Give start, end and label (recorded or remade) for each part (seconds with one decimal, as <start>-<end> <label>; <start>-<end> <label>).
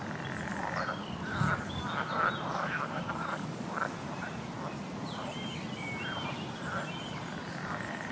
0.0-1.0 recorded; 1.0-2.1 remade; 2.1-2.5 recorded; 2.5-3.9 remade; 3.9-8.1 recorded